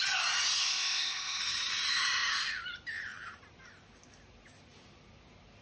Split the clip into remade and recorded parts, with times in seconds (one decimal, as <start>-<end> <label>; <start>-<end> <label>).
0.0-0.6 recorded; 0.6-1.4 remade; 1.4-5.6 recorded